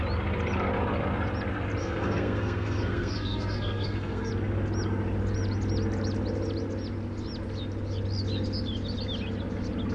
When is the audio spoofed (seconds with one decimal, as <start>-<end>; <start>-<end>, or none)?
1.8-4.3